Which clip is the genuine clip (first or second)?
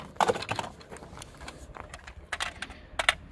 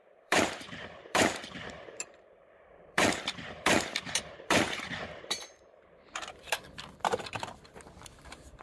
first